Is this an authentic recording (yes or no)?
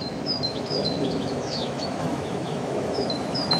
no